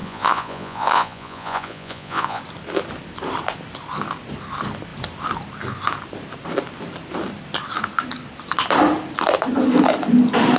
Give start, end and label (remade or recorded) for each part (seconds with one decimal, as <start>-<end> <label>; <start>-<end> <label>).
0.0-2.4 remade; 2.4-10.6 recorded